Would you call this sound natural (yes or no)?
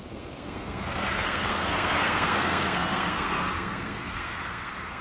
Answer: no